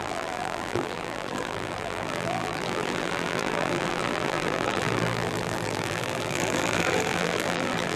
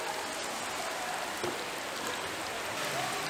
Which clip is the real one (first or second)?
second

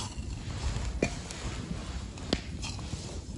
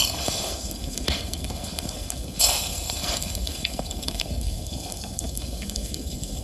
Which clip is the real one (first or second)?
first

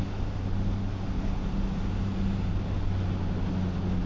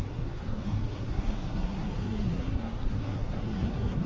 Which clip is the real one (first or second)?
first